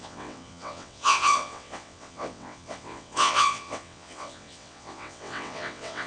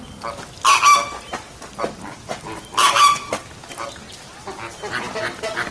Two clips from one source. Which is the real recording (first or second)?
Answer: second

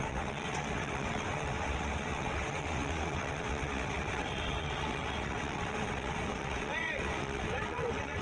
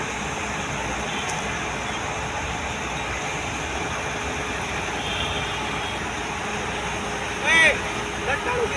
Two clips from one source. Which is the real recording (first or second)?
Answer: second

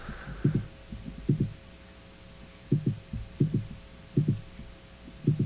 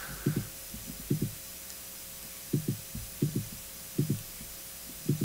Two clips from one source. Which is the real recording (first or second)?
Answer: first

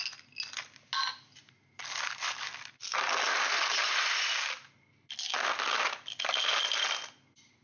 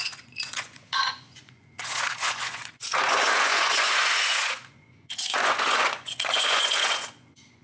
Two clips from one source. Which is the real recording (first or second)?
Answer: first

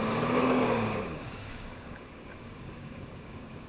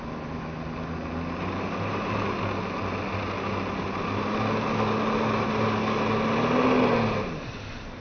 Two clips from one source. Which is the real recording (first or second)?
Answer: second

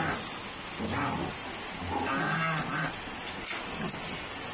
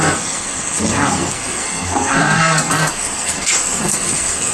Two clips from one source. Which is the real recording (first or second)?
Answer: first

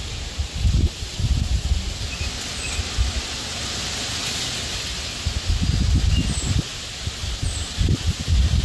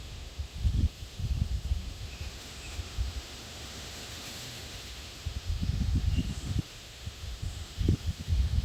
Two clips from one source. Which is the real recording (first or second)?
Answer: first